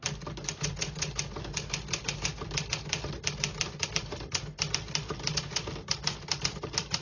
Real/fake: real